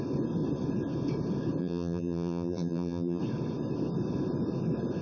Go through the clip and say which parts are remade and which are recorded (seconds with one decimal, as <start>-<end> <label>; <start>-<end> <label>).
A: 0.0-1.6 recorded; 1.6-3.2 remade; 3.2-5.0 recorded